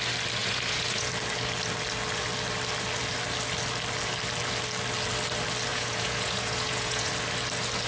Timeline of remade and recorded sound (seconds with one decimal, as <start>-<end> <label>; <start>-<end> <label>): 0.0-0.4 recorded; 0.4-1.1 remade; 1.1-5.7 recorded; 5.7-7.1 remade; 7.1-7.9 recorded